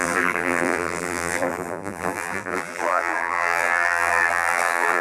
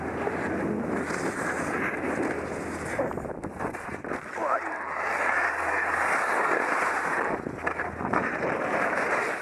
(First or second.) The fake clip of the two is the first